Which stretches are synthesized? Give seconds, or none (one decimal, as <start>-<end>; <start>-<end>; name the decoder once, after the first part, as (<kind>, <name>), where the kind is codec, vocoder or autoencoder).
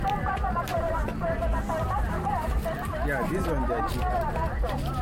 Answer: none